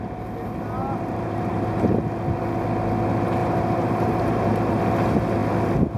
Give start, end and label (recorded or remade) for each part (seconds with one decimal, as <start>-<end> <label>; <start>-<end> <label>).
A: 0.0-0.8 recorded; 0.8-1.9 remade; 1.9-3.4 recorded; 3.4-4.8 remade; 4.8-6.0 recorded